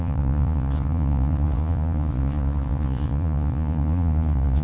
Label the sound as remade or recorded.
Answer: remade